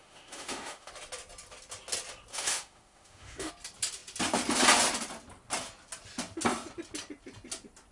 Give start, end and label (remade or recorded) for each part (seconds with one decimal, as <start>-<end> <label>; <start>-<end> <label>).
0.0-0.9 remade; 0.9-2.3 recorded; 2.3-3.5 remade; 3.5-7.9 recorded

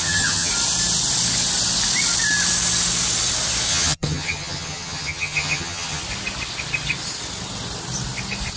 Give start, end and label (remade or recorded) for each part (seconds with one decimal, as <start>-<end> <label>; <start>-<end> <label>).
0.0-0.5 remade; 0.5-3.7 recorded; 3.7-6.0 remade; 6.0-8.6 recorded

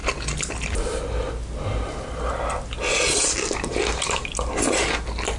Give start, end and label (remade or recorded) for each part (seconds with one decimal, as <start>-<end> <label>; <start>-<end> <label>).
0.0-5.4 recorded

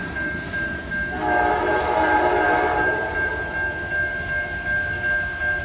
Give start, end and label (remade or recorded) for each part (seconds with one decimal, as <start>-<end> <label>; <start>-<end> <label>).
0.0-0.8 remade; 0.8-1.7 recorded; 1.7-3.3 remade; 3.3-5.6 recorded

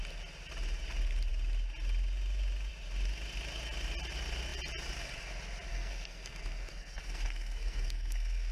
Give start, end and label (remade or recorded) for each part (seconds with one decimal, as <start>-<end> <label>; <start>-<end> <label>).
0.0-5.7 recorded; 5.7-8.5 remade

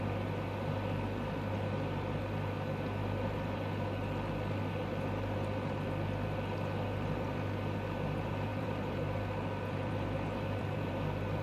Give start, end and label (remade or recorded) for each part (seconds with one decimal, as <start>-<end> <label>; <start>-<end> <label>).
0.0-8.5 recorded; 8.5-10.9 remade; 10.9-11.4 recorded